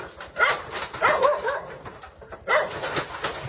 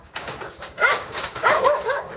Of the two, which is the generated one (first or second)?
second